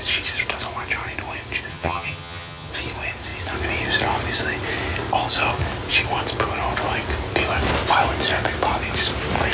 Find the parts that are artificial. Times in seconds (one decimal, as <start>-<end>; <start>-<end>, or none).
1.7-2.7